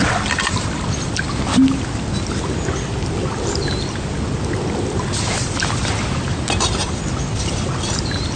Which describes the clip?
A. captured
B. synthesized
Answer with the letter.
A